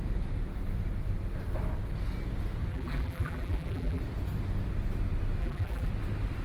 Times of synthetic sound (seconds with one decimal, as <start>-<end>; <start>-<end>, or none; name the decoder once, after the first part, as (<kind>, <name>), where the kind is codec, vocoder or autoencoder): 2.7-4.0 (vocoder, BigVGAN v2); 5.4-5.9